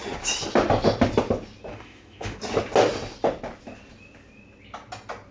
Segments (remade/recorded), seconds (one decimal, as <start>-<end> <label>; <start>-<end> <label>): 0.0-1.7 recorded; 1.7-2.4 remade; 2.4-5.3 recorded